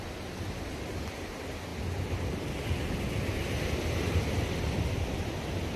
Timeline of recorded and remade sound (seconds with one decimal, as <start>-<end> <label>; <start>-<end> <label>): 0.0-5.8 recorded

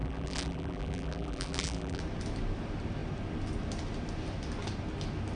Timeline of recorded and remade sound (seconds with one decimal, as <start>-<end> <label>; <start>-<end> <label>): 0.0-2.0 remade; 2.0-5.4 recorded